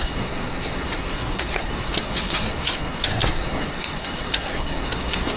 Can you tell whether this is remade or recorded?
remade